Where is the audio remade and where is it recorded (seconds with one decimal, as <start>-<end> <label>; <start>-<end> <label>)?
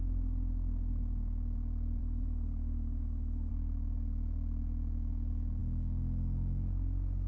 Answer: 0.0-2.0 recorded; 2.0-3.5 remade; 3.5-7.3 recorded